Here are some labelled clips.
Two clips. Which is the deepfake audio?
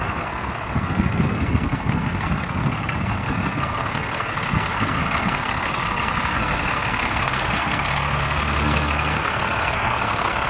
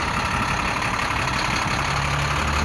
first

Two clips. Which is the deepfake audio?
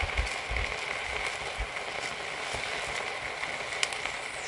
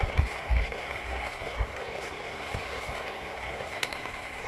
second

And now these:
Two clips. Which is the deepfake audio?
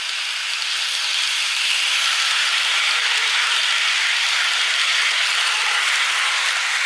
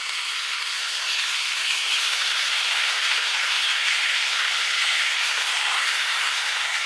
second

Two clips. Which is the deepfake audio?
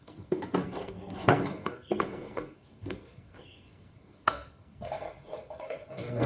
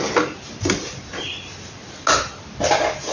first